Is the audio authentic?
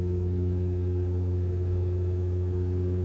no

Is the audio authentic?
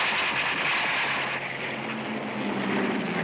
yes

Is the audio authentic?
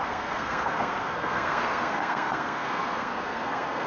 no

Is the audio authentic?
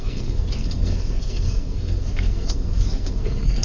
no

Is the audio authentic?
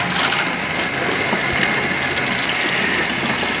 yes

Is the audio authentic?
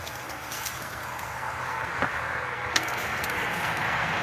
no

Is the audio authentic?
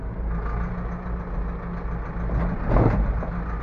yes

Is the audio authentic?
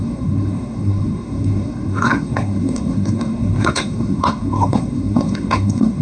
no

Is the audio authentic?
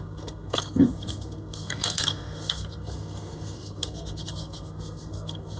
no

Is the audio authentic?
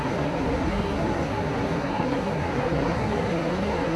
no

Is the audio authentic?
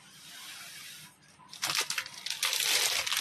yes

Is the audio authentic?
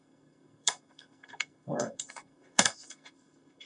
no